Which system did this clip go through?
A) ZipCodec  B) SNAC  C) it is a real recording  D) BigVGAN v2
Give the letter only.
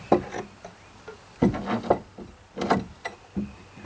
C